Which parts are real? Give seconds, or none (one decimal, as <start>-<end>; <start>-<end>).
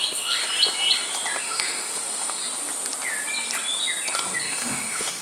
0.4-1.4; 2.4-4.4